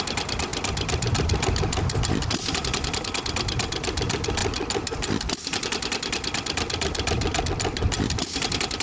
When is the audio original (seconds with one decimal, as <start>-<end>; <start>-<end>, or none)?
0.0-0.5; 2.0-8.8